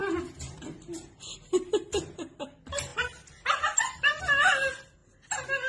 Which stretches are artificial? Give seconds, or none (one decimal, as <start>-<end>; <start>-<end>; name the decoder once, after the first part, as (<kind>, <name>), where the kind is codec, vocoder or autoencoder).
none